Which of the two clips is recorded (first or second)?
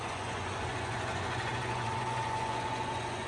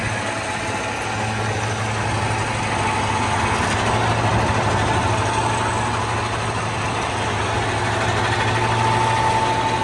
second